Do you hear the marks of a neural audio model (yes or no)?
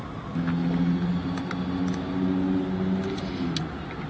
no